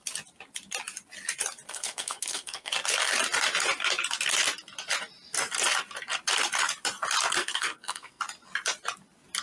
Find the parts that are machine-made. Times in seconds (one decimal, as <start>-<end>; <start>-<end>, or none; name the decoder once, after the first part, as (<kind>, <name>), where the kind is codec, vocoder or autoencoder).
1.7-2.7 (codec, SNAC); 7.4-8.2